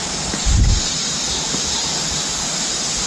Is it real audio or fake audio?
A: real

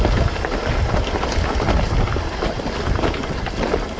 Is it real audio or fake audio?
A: real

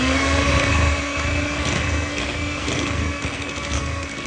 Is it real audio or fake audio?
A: fake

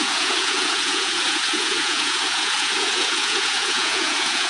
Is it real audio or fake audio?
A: fake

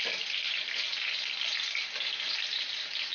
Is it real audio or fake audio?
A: real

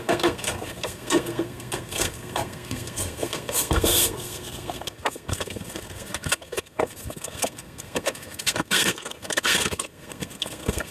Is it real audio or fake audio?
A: fake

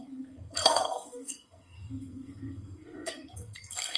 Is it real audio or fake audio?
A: fake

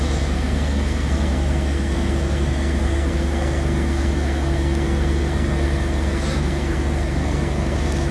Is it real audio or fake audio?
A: fake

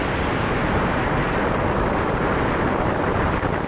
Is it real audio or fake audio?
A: fake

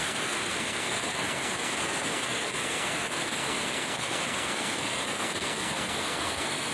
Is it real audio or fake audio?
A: fake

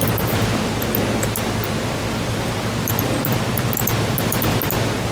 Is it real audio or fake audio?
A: real